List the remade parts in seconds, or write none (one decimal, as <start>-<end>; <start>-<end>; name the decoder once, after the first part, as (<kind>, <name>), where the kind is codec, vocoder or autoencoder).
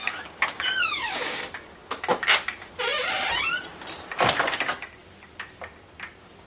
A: 0.0-1.4 (codec, DAC)